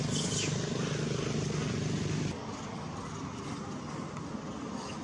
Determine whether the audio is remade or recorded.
recorded